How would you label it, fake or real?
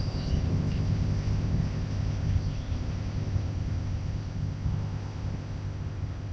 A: fake